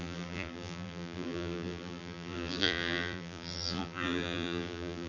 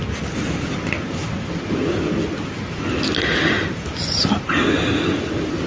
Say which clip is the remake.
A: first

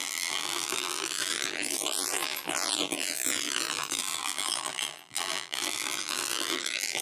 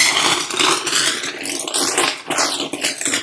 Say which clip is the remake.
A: first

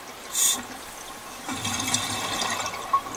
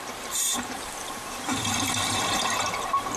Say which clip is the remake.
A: second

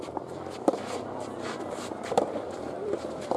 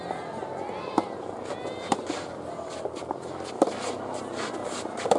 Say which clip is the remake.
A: first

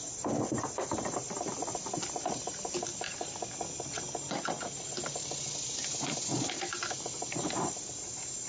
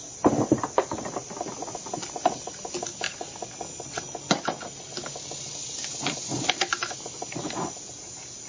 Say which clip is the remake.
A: first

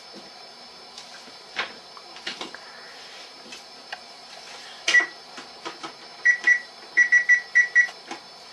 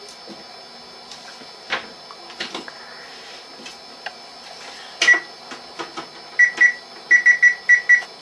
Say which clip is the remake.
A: first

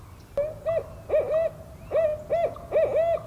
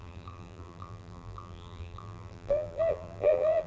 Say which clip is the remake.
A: second